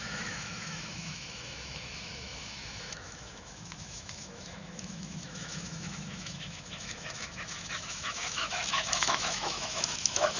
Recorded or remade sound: remade